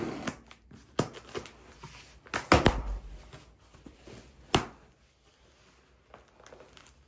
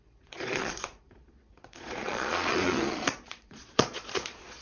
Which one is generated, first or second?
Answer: second